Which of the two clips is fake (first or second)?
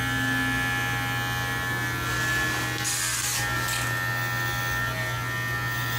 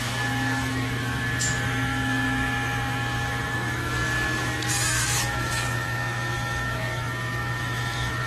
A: second